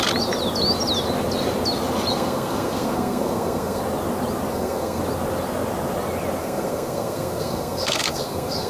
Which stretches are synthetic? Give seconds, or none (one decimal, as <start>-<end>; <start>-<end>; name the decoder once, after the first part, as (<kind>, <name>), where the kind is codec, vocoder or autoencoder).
2.1-3.8 (codec, SNAC); 4.5-5.0; 6.4-8.7